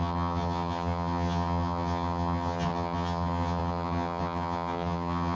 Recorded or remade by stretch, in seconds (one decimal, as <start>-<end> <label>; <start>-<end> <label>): 0.0-5.4 remade